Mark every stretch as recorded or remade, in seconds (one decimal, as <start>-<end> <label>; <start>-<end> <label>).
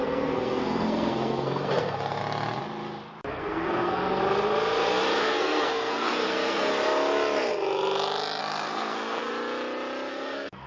0.0-2.2 remade; 2.2-3.3 recorded; 3.3-4.2 remade; 4.2-5.2 recorded; 5.2-6.7 remade; 6.7-8.4 recorded; 8.4-9.3 remade; 9.3-10.1 recorded; 10.1-10.7 remade